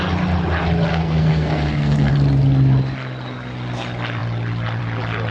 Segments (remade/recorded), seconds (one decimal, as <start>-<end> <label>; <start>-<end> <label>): 0.0-0.9 recorded; 0.9-2.1 remade; 2.1-5.3 recorded